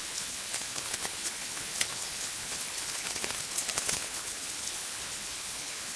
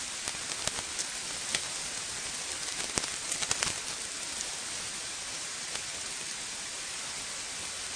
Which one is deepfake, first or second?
first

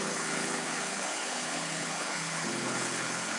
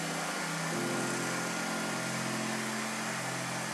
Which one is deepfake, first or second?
first